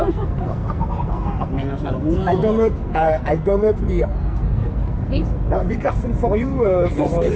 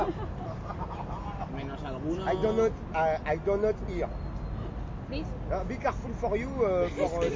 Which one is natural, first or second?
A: second